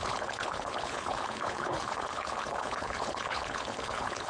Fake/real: fake